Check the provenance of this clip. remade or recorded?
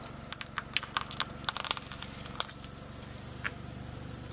recorded